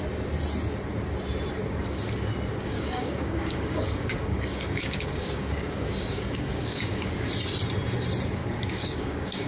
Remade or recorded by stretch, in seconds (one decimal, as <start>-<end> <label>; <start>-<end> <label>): 0.0-2.5 recorded; 2.5-7.1 remade; 7.1-8.4 recorded; 8.4-9.5 remade